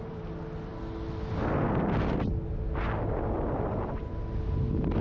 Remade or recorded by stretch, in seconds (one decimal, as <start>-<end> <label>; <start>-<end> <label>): 0.0-5.0 recorded